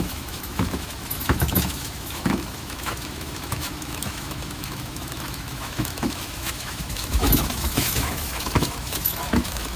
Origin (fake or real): fake